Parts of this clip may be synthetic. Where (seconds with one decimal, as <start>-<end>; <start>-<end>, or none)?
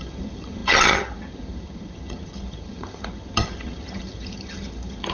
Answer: 0.0-5.1